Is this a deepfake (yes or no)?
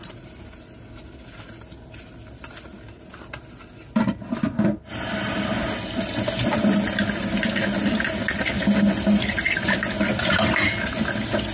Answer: no